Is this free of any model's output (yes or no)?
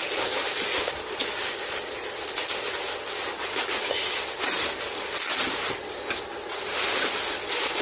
yes